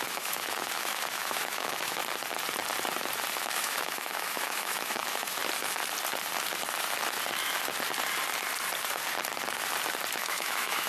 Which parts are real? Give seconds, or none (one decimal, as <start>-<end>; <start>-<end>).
2.0-3.4; 5.4-10.1